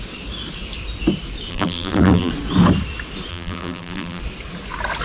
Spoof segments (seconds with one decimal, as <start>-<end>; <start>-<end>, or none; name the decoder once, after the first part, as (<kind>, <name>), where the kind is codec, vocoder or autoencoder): 1.5-2.3 (vocoder, BigVGAN v2); 3.3-4.2